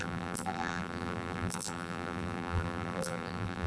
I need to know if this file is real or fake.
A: fake